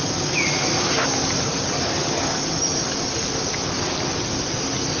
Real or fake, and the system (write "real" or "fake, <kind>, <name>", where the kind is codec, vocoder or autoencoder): real